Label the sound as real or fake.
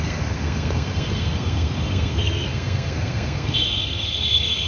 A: fake